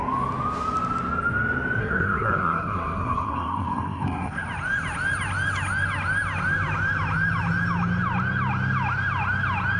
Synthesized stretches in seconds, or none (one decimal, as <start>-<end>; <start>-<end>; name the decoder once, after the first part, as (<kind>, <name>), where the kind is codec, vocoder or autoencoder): 1.8-4.4 (codec, SNAC)